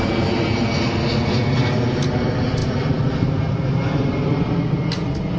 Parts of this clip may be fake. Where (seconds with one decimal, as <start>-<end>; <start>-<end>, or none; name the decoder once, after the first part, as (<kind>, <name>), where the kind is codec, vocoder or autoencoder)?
none